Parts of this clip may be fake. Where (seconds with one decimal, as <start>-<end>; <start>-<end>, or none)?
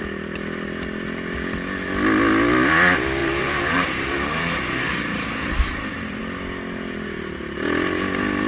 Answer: 3.2-6.2